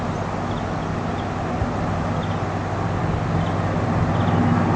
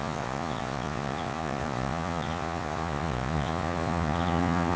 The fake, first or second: second